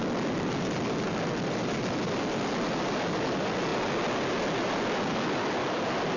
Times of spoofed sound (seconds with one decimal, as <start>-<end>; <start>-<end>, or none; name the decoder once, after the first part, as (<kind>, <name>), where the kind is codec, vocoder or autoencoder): none